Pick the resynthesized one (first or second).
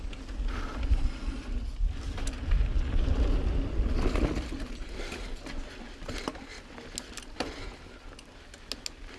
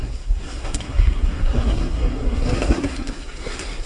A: second